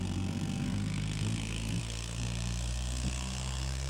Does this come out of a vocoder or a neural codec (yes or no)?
yes